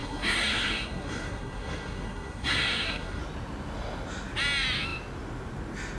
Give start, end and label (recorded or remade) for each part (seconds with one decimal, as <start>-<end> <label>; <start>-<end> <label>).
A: 0.0-3.2 remade; 3.2-6.0 recorded